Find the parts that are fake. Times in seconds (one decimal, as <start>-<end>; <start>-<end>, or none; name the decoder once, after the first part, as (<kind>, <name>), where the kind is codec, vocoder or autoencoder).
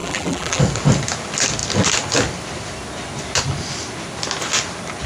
0.0-0.6 (vocoder, BigVGAN v2)